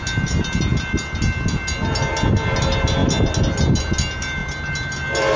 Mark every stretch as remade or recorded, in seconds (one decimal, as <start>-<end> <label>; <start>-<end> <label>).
0.0-5.4 recorded